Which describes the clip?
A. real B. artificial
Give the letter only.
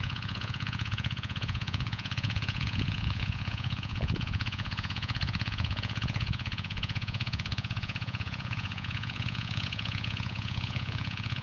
B